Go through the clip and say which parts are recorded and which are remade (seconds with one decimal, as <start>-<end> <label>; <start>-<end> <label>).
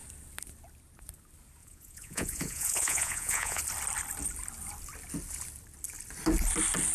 0.0-1.6 recorded; 1.6-3.6 remade; 3.6-6.9 recorded